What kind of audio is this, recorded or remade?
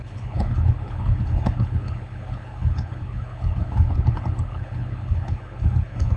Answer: remade